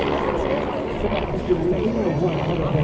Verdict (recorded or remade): recorded